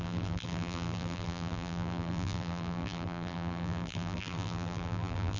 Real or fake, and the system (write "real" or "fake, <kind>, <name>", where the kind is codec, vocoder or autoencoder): fake, vocoder, BigVGAN v2